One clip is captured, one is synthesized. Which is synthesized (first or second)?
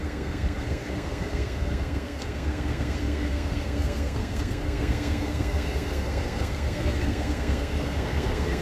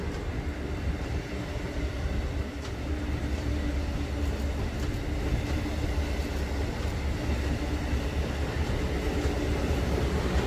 first